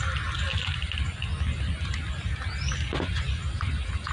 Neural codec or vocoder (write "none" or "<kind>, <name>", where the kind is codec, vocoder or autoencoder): none